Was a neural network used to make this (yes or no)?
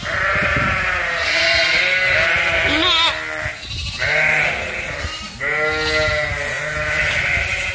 no